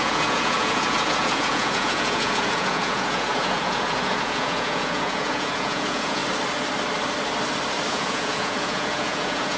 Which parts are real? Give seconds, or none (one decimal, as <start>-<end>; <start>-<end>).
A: 6.2-7.9